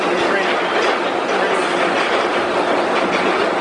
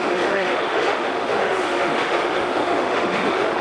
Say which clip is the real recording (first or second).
first